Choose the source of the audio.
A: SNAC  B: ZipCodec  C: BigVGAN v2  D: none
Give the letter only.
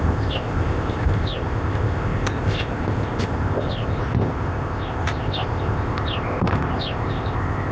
B